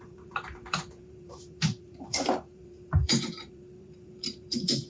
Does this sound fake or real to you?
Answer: fake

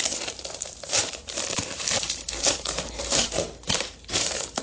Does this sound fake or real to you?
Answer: fake